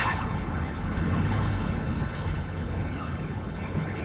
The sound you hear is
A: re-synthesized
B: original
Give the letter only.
A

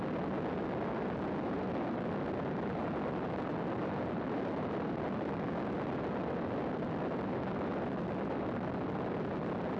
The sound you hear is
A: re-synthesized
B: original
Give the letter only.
B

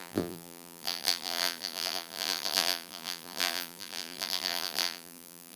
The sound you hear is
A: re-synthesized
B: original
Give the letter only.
A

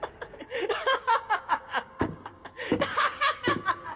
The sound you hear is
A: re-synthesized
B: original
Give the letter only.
A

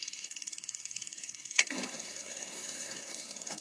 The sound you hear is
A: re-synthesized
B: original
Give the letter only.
A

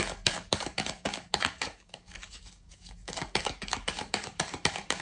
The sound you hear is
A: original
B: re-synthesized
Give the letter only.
B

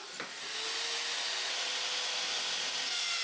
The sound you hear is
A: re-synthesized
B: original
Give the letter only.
B